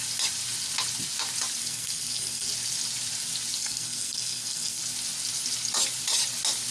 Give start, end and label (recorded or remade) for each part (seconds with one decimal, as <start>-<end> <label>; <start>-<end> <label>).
0.0-1.6 recorded; 1.6-2.5 remade; 2.5-3.6 recorded; 3.6-4.8 remade; 4.8-6.7 recorded